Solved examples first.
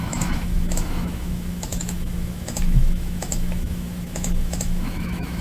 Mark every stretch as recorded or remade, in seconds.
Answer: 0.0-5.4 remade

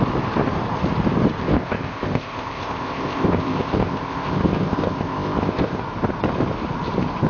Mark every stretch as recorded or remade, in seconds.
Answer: 0.0-1.4 recorded; 1.4-5.8 remade; 5.8-7.3 recorded